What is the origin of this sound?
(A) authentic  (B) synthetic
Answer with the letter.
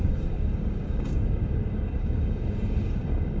B